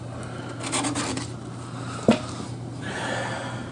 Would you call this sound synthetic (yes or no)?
no